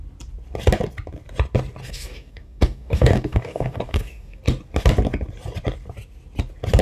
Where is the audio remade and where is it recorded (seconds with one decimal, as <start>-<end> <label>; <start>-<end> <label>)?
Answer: 0.0-1.8 recorded; 1.8-4.4 remade; 4.4-6.8 recorded